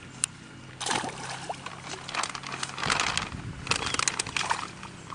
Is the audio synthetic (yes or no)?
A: no